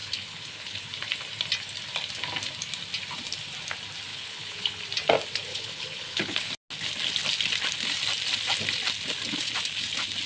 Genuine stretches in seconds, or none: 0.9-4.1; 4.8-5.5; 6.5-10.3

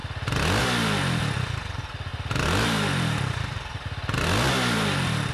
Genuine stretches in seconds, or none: 0.6-2.1

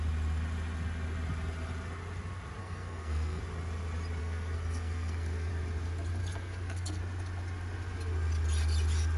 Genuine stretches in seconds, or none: 0.0-2.6; 3.4-4.2; 5.5-6.2; 7.0-9.2

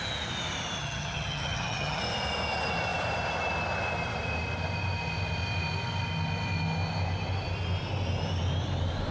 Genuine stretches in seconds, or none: 0.0-0.8; 2.0-9.1

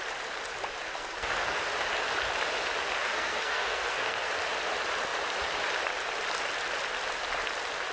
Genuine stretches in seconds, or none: 0.0-0.9; 1.6-3.0; 4.3-7.9

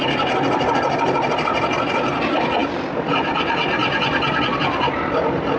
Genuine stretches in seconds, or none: 0.0-5.6

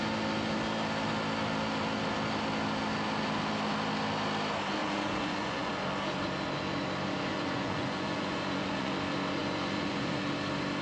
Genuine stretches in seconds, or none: 0.0-4.8; 5.7-7.3; 8.9-9.4; 10.2-10.8

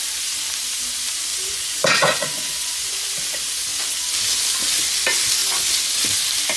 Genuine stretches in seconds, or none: 0.0-1.3; 2.9-6.6